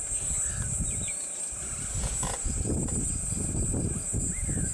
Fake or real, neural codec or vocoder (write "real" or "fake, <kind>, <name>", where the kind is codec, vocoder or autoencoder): real